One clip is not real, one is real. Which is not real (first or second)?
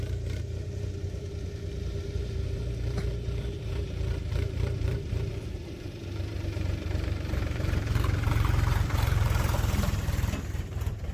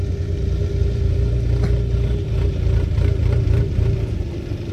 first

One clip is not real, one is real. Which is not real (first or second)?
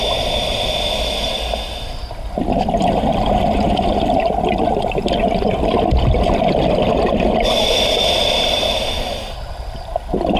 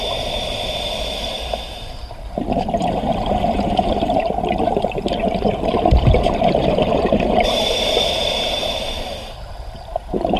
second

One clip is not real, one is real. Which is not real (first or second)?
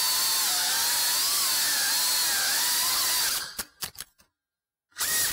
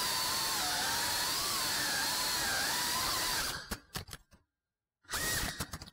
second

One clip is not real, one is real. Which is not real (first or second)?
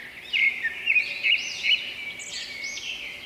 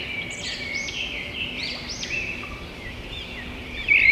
second